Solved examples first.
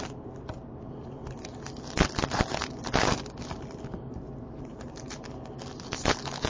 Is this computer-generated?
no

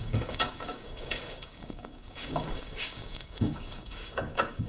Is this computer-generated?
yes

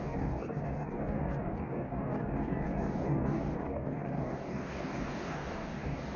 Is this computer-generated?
yes